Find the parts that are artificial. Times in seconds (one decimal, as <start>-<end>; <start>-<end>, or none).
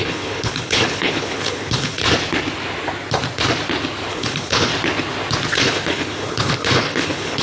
0.0-2.0; 4.1-4.7; 5.5-7.4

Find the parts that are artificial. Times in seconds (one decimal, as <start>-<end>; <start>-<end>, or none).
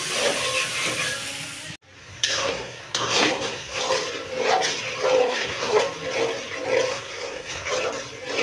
2.0-3.8; 5.2-5.8; 6.9-7.7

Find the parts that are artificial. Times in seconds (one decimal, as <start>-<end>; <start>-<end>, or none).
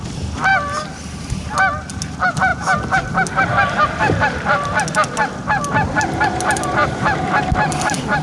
2.5-7.4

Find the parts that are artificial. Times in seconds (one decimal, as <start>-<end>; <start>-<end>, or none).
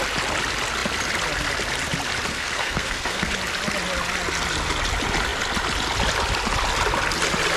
2.3-3.3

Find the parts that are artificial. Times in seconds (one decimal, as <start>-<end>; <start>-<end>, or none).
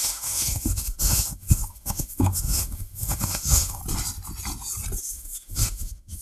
0.0-3.8; 5.0-6.2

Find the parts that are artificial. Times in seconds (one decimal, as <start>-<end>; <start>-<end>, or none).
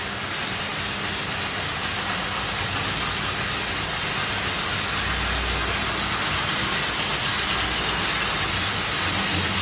none